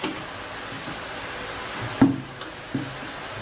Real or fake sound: real